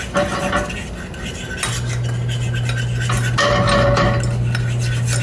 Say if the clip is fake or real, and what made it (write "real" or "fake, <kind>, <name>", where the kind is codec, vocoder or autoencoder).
real